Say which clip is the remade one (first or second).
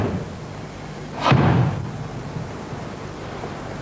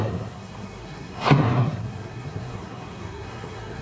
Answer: second